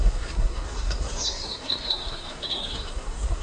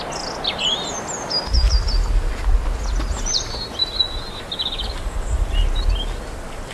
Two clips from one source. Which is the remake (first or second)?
first